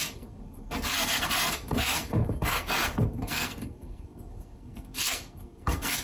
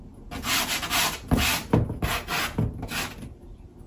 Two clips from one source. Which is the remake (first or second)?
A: first